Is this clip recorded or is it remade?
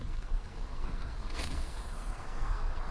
remade